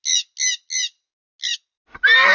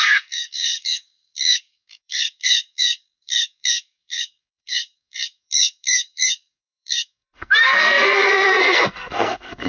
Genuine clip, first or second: first